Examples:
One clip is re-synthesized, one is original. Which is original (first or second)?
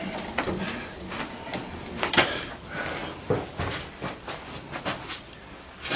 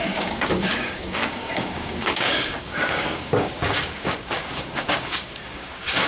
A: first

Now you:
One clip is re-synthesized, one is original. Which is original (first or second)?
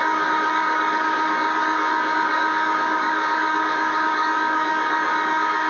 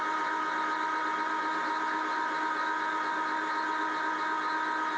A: second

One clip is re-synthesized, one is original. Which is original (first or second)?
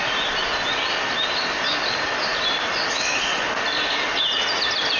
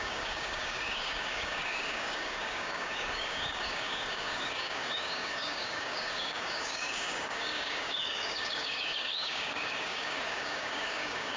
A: first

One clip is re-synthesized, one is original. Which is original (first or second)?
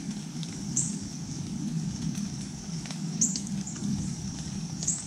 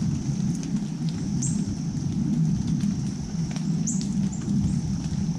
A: second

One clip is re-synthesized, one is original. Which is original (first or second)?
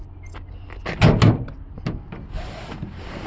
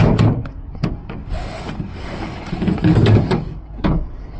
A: first